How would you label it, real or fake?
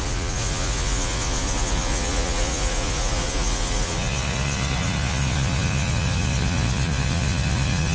fake